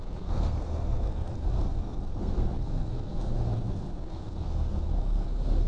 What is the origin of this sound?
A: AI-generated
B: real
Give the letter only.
A